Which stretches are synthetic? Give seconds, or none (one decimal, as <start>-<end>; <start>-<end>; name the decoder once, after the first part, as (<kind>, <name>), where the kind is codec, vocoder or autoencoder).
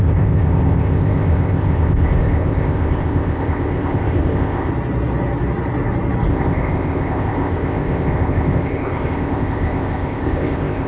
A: 0.0-4.7 (codec, ZipCodec); 6.3-10.9